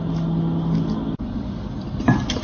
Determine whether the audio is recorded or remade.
recorded